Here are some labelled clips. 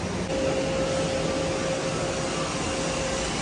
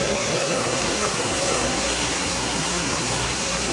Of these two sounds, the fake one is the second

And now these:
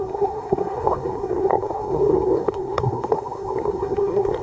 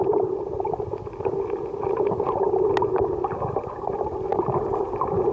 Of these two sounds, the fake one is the first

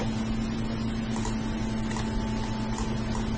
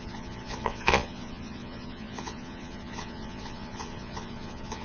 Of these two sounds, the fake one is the second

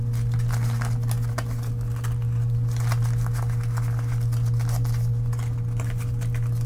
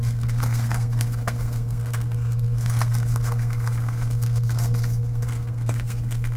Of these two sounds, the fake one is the second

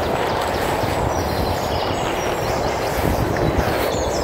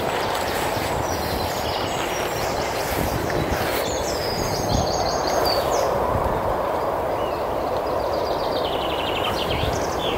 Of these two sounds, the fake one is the second